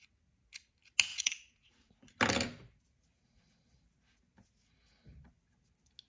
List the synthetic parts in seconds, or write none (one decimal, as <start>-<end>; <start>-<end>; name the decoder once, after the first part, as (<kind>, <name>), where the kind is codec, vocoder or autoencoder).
1.1-2.1 (vocoder, Vocos)